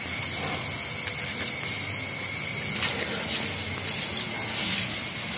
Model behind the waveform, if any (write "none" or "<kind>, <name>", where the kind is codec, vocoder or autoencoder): none